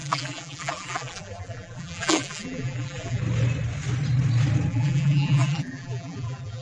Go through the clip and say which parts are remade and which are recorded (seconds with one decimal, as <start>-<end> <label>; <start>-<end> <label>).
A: 0.0-3.2 remade; 3.2-4.7 recorded; 4.7-6.6 remade

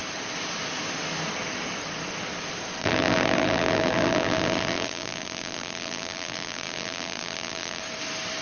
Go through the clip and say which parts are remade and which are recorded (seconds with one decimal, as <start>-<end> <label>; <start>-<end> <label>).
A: 0.0-2.8 recorded; 2.8-7.8 remade; 7.8-8.4 recorded

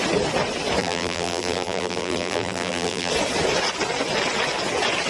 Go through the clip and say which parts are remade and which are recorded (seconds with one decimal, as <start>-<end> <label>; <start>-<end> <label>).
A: 0.0-0.8 recorded; 0.8-3.1 remade; 3.1-5.1 recorded